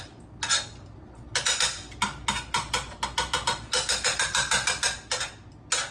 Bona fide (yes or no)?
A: yes